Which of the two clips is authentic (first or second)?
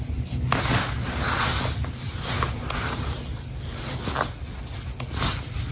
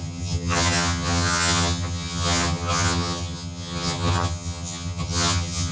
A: first